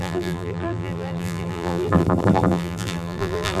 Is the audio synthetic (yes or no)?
yes